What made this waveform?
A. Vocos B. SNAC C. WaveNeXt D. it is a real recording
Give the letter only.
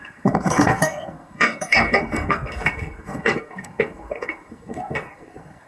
B